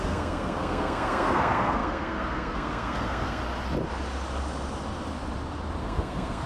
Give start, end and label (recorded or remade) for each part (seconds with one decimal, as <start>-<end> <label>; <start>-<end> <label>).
0.0-3.4 remade; 3.4-5.8 recorded; 5.8-6.5 remade